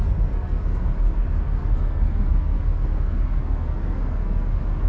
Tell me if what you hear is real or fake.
fake